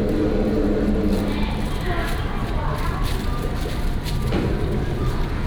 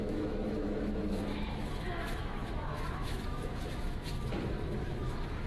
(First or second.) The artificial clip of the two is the second